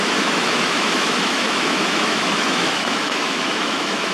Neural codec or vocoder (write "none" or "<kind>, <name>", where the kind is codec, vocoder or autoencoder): autoencoder, DAC-VAE